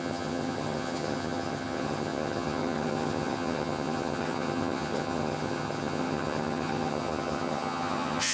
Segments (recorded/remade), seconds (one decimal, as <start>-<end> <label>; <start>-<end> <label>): 0.0-8.3 remade